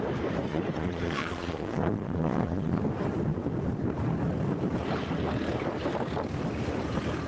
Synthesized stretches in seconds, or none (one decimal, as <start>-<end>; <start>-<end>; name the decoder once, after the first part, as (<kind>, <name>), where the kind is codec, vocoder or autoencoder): 0.5-2.8 (vocoder, Vocos)